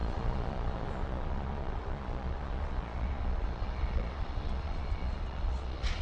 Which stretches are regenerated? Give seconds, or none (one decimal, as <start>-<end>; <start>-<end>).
0.0-6.0